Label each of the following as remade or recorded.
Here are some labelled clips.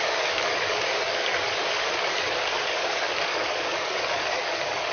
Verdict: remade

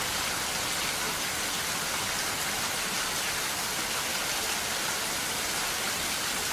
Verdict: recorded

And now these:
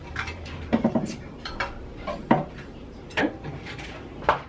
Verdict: remade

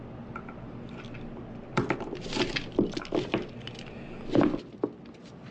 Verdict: recorded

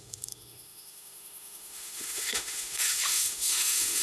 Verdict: remade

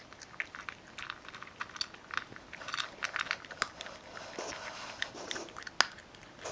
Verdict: recorded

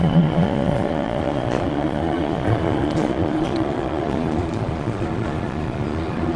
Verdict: remade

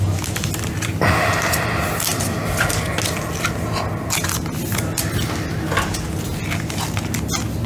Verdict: recorded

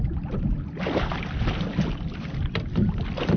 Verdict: recorded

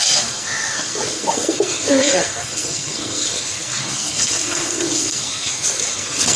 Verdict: remade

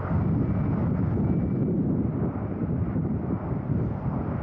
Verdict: recorded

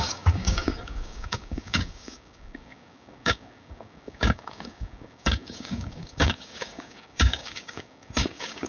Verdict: remade